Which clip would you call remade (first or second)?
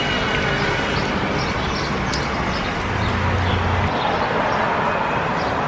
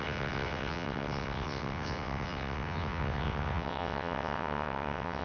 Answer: second